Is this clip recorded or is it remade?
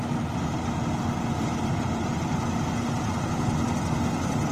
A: recorded